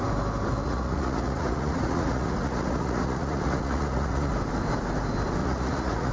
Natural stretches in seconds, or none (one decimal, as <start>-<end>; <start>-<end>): 0.0-0.6; 4.3-5.4

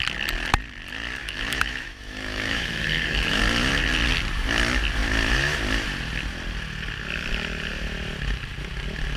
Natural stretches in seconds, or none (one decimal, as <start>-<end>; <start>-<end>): 0.0-1.2; 3.4-9.2

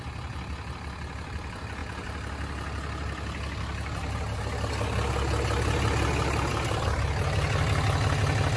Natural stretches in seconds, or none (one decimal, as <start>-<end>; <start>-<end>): 0.0-8.6

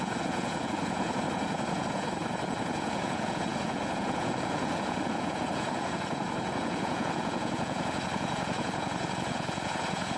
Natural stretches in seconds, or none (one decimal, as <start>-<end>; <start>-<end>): none

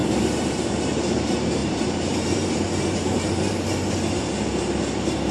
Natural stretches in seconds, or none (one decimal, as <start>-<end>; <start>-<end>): 0.8-1.6; 4.2-5.3

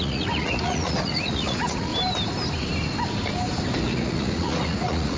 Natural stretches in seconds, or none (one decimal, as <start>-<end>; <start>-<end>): 1.9-3.8

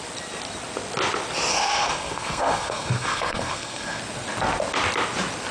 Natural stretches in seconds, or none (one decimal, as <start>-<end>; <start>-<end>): 0.0-1.5; 4.0-5.5

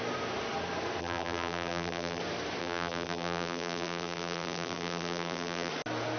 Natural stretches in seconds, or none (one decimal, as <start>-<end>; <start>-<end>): 0.0-1.0; 2.2-2.6; 5.7-6.2